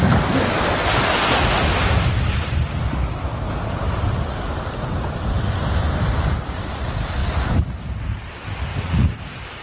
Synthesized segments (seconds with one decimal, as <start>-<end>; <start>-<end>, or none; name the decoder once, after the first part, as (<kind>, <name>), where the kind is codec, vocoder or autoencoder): 8.7-9.2 (vocoder, Vocos)